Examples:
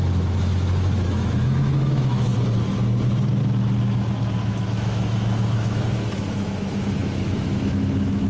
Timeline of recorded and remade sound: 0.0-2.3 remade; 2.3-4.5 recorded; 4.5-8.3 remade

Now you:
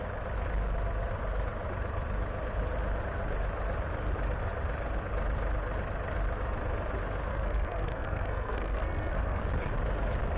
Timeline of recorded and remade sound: 0.0-7.3 recorded; 7.3-9.4 remade; 9.4-10.4 recorded